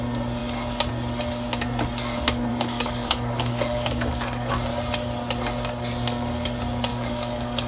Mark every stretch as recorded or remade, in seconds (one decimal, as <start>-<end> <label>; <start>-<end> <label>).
0.0-2.5 recorded; 2.5-4.5 remade; 4.5-6.9 recorded; 6.9-7.7 remade